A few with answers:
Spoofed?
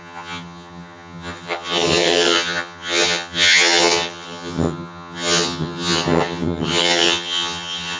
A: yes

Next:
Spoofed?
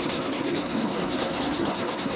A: yes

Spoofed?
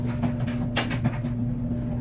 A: no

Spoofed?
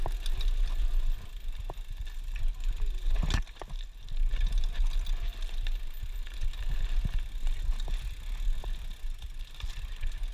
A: no